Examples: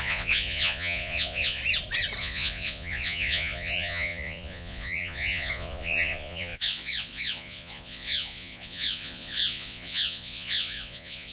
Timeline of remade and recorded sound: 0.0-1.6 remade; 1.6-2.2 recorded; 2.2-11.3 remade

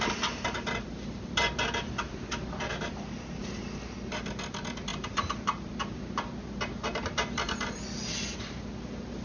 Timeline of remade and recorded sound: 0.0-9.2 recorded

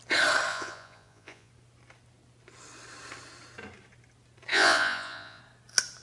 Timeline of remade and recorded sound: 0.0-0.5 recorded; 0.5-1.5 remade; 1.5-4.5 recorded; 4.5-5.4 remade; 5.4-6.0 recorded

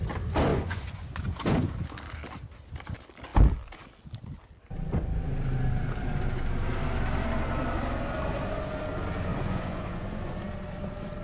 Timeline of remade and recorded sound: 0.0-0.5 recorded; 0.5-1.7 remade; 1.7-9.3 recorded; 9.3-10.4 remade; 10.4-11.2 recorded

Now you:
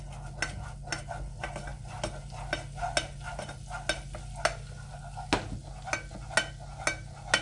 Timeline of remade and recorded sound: 0.0-7.4 recorded

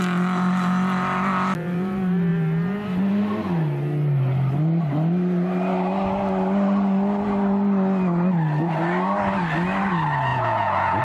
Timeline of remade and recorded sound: 0.0-10.3 recorded; 10.3-11.0 remade

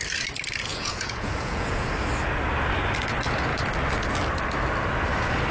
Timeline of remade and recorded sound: 0.0-0.7 recorded; 0.7-1.9 remade; 1.9-5.5 recorded

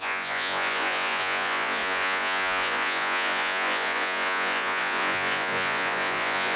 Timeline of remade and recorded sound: 0.0-6.6 remade